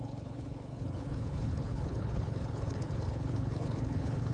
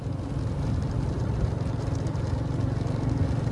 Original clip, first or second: second